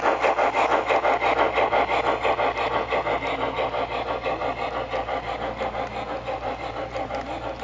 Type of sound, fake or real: real